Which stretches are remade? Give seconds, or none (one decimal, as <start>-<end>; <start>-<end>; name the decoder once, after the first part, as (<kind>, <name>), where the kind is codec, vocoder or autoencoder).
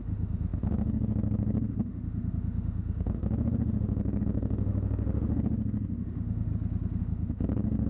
0.0-6.5 (autoencoder, DAC-VAE); 7.0-7.9